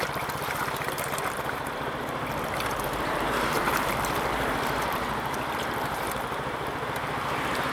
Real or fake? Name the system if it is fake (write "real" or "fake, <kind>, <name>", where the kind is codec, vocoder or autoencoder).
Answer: fake, vocoder, BigVGAN v2